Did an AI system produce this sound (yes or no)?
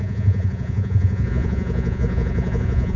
yes